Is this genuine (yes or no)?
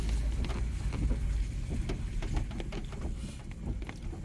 yes